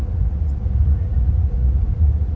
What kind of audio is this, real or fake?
fake